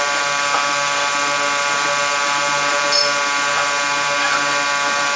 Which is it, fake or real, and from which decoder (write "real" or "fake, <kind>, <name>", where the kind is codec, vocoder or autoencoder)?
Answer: real